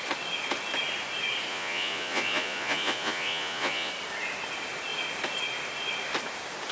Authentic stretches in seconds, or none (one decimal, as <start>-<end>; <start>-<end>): 0.0-1.5; 3.9-6.7